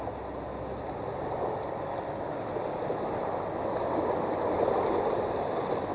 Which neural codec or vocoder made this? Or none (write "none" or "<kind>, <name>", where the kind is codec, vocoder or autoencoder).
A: none